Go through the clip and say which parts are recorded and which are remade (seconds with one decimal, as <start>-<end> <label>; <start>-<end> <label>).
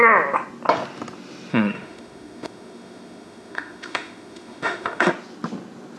0.0-1.5 recorded; 1.5-5.1 remade; 5.1-6.0 recorded